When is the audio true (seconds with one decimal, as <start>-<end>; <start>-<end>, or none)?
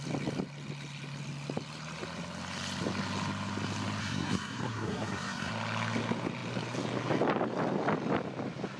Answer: 0.0-4.0; 5.5-8.8